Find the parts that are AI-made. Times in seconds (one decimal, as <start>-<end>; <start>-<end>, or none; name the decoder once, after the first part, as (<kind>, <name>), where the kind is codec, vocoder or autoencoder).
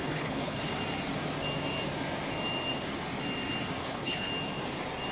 0.0-0.7 (codec, HILCodec); 3.8-4.3